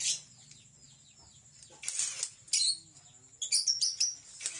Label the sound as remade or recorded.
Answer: recorded